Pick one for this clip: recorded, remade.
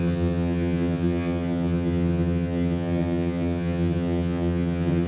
remade